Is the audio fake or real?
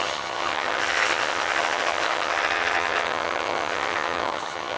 fake